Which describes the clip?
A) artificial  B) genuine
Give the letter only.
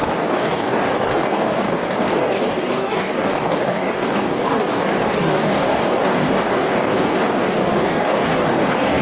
A